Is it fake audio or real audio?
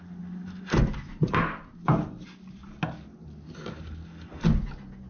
real